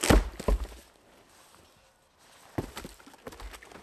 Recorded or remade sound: recorded